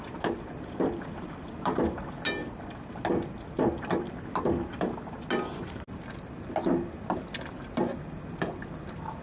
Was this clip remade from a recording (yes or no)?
no